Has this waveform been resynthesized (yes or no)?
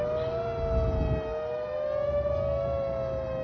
no